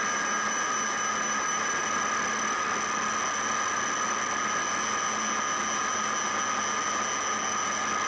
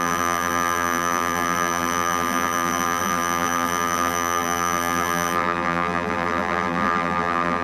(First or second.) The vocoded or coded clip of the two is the second